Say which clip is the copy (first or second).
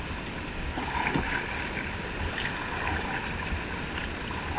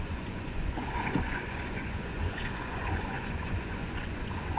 second